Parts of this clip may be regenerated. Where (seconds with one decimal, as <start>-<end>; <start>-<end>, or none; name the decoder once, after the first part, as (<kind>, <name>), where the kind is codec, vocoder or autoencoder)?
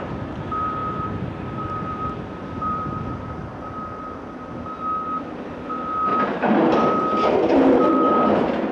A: 0.8-3.4 (vocoder, BigVGAN v2); 6.1-8.1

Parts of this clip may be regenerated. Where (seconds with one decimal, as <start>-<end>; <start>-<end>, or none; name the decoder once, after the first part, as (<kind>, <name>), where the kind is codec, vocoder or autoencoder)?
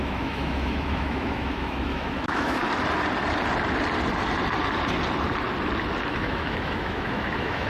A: 0.0-2.6 (autoencoder, DAC-VAE); 6.1-7.7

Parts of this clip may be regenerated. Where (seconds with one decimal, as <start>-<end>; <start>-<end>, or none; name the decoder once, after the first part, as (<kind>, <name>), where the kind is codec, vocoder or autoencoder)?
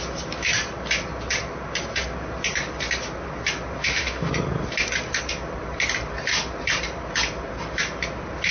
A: 3.8-4.3 (autoencoder, DAC-VAE)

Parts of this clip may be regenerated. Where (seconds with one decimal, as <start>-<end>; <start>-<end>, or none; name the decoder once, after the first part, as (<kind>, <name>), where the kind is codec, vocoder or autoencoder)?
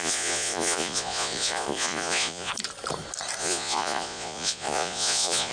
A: 0.0-2.5 (vocoder, Vocos); 3.4-5.5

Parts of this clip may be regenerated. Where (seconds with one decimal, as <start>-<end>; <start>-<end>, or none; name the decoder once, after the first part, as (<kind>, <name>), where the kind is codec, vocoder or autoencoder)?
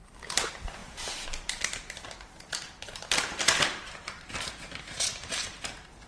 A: 0.0-6.1 (vocoder, BigVGAN v2)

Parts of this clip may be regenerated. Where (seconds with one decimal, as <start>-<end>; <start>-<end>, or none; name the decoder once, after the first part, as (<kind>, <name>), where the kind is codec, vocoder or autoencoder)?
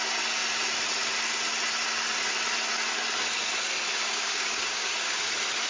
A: 4.0-5.3 (codec, DAC)